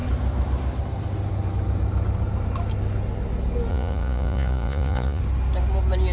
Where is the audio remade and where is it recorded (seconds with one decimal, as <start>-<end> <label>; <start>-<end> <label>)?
0.0-3.7 recorded; 3.7-5.2 remade; 5.2-6.1 recorded

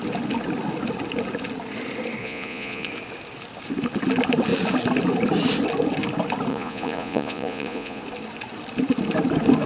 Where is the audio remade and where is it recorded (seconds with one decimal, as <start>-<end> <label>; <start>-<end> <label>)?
0.0-2.2 recorded; 2.2-2.9 remade; 2.9-6.5 recorded; 6.5-8.0 remade; 8.0-9.7 recorded

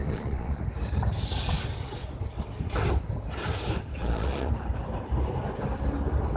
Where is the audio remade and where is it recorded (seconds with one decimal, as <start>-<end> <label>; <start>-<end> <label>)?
0.0-0.6 remade; 0.6-4.0 recorded; 4.0-4.5 remade; 4.5-6.4 recorded

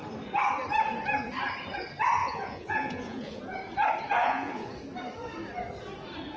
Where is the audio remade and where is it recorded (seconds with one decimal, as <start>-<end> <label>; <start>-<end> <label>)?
0.0-2.2 recorded; 2.2-3.4 remade; 3.4-4.2 recorded; 4.2-4.7 remade; 4.7-6.4 recorded

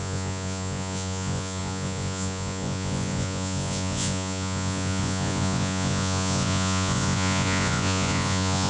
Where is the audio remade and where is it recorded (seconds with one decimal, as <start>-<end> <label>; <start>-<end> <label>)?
0.0-8.7 remade